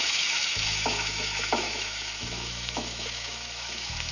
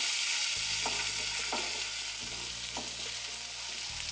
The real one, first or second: second